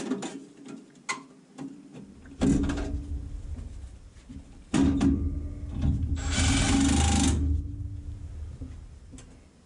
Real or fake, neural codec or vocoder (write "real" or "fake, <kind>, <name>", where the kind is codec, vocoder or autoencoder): real